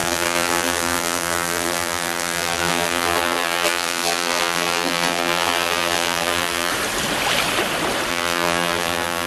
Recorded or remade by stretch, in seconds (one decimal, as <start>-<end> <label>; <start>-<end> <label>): 0.0-6.7 remade; 6.7-8.1 recorded; 8.1-9.3 remade